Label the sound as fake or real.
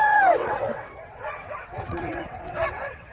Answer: fake